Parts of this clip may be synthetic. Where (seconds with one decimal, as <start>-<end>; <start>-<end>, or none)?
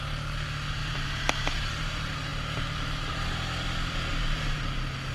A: 0.8-1.8; 2.3-3.1; 4.1-4.6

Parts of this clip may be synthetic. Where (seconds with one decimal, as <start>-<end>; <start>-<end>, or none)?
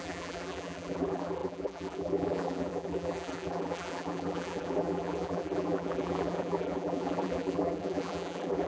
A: 0.0-8.7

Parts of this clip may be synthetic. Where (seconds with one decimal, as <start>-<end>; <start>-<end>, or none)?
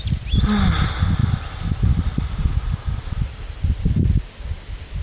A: none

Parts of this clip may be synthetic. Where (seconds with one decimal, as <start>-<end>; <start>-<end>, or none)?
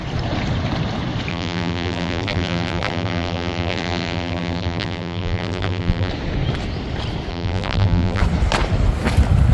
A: 1.3-6.1; 7.3-8.2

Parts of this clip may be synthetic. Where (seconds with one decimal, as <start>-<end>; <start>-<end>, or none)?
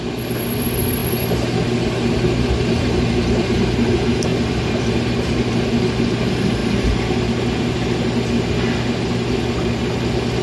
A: none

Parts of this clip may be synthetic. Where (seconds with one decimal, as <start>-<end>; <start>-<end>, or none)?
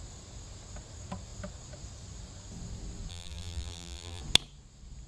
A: 3.1-4.2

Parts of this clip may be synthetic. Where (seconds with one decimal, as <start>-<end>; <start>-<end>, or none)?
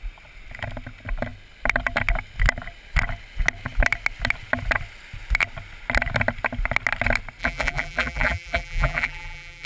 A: 7.4-9.7